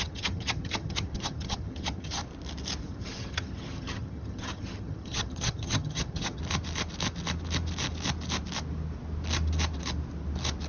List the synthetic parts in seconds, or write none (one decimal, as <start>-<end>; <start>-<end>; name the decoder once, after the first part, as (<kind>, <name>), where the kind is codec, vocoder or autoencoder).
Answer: 0.0-2.2 (vocoder, HiFi-GAN); 2.8-6.4